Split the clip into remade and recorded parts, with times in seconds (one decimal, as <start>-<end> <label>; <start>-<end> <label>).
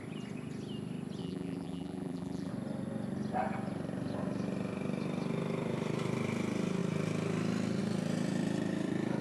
0.0-1.2 recorded; 1.2-2.5 remade; 2.5-9.2 recorded